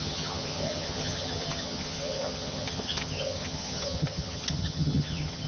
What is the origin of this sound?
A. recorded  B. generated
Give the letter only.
B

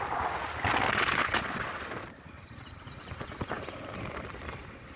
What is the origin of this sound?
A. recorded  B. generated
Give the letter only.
A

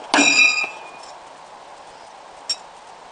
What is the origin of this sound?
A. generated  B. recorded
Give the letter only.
B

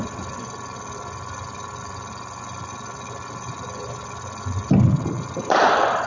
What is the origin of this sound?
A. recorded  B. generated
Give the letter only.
A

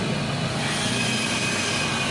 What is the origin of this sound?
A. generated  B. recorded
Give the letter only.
B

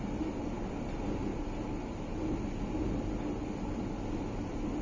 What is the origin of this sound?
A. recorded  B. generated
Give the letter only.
A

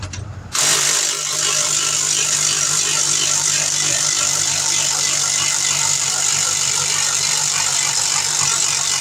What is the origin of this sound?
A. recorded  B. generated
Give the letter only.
B